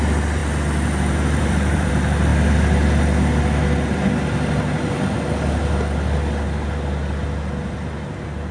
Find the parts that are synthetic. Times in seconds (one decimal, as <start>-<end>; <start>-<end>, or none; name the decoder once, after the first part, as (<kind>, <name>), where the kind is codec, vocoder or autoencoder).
0.4-1.9 (vocoder, BigVGAN v2)